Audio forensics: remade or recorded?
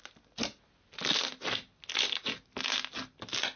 recorded